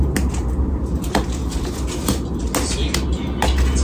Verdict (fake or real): real